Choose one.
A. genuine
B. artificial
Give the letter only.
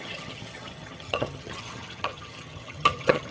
B